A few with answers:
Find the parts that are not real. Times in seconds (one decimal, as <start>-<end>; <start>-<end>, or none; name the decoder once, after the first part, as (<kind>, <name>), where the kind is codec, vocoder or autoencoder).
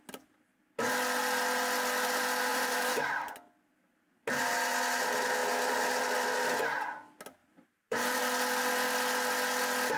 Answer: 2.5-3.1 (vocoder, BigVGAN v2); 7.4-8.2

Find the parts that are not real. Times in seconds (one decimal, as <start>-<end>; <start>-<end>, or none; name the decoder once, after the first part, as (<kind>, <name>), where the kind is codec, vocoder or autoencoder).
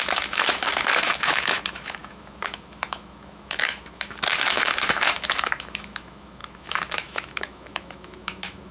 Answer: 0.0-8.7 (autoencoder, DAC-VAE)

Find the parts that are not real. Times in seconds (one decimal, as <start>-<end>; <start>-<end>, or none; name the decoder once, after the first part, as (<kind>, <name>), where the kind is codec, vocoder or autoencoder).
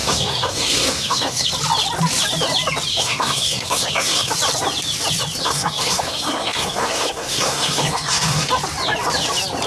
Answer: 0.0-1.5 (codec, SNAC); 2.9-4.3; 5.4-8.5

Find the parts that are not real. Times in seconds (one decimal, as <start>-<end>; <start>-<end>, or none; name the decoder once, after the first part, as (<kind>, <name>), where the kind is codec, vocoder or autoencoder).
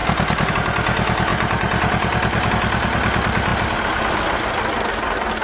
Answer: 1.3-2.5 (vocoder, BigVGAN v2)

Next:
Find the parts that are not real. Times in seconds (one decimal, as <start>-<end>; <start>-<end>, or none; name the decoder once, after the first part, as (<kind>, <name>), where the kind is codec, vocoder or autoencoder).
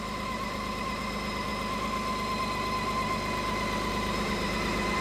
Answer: 0.0-1.5 (vocoder, BigVGAN v2); 3.9-5.0